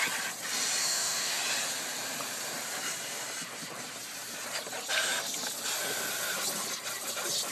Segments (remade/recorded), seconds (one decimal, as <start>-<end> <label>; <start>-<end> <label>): 0.0-0.8 recorded; 0.8-1.4 remade; 1.4-7.5 recorded